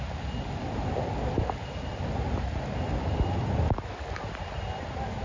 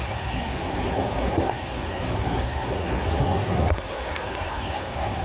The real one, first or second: first